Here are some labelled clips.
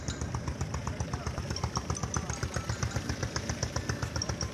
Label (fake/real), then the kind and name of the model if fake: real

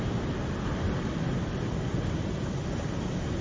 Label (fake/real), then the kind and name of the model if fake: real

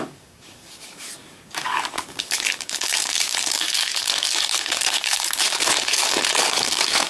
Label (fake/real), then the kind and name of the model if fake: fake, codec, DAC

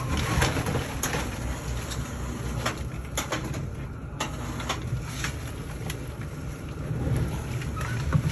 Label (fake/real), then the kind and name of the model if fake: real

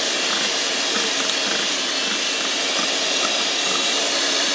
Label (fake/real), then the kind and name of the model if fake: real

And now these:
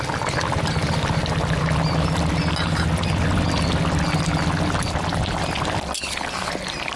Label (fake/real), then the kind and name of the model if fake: real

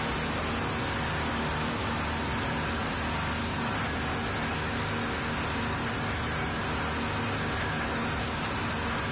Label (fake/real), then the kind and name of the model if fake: real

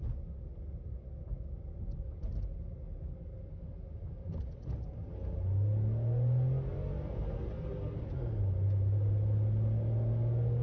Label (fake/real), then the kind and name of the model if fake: real